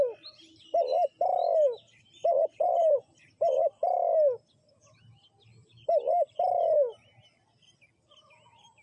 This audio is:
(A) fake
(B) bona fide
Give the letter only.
B